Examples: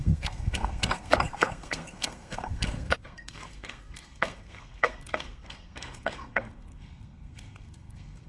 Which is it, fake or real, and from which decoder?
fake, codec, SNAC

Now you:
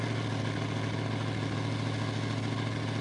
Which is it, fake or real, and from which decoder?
real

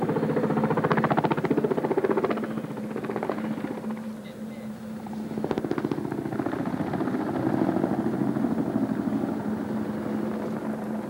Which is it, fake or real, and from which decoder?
real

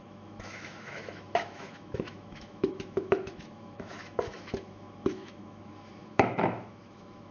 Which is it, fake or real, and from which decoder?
fake, autoencoder, DAC-VAE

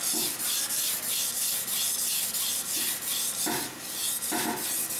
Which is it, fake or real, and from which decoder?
real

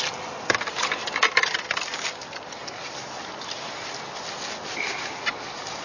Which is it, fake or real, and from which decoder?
real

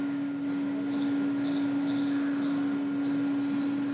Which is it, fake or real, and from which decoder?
real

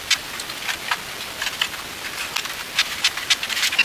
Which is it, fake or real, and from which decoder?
real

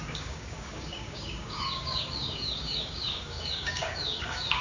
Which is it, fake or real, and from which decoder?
fake, codec, DAC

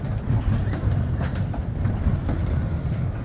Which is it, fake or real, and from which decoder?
fake, vocoder, BigVGAN v2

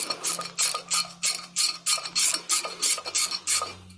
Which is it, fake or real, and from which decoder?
real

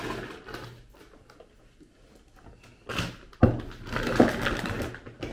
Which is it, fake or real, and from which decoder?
real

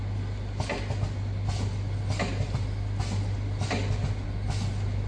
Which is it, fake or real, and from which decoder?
real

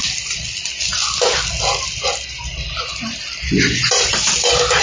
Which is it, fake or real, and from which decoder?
real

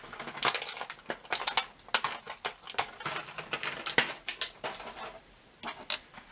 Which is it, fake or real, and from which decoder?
real